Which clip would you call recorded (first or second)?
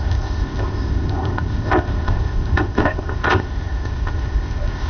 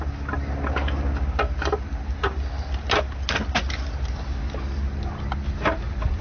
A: second